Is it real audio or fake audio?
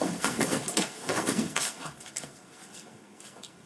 fake